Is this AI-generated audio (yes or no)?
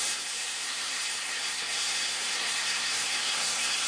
yes